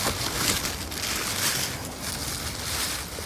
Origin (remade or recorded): recorded